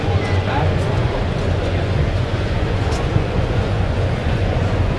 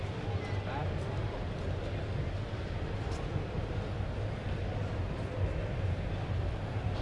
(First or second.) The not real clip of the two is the first